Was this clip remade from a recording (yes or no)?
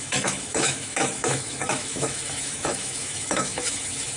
yes